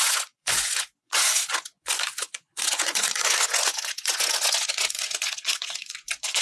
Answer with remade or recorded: remade